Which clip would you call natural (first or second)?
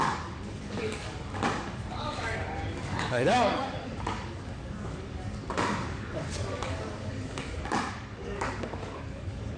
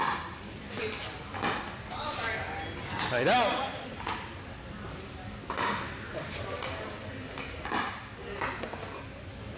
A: second